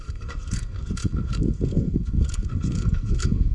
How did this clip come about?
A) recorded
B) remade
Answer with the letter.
B